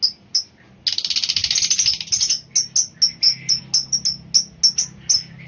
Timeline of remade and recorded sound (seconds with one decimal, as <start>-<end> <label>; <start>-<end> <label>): 0.0-5.5 recorded